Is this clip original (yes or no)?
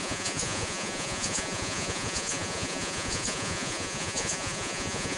no